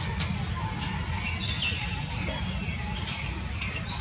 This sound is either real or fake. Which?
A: real